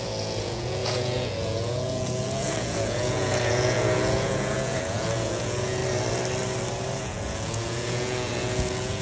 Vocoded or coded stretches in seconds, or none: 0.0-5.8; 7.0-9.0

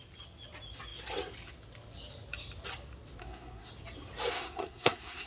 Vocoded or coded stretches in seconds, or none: 3.2-3.7; 4.3-5.3